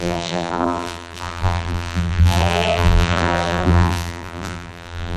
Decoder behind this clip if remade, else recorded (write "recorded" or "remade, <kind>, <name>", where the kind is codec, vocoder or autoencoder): remade, vocoder, BigVGAN v2